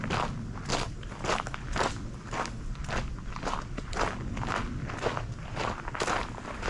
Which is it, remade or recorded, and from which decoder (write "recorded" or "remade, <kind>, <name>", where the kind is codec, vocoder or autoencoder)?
recorded